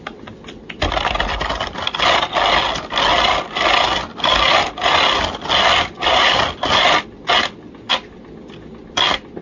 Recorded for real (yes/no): yes